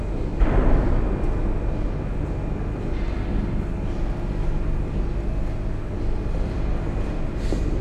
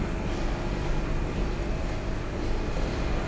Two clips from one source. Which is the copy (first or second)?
second